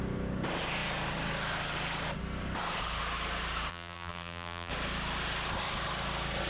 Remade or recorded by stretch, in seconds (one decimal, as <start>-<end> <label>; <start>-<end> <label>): 0.0-3.7 recorded; 3.7-4.7 remade; 4.7-6.5 recorded